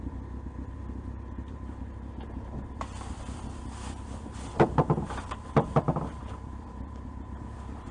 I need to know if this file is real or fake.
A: fake